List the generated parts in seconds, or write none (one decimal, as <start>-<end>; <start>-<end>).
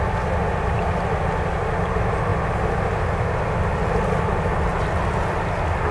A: none